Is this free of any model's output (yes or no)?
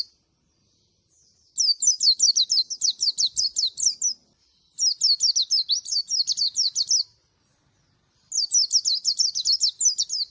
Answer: yes